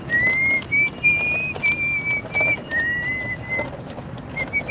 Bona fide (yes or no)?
yes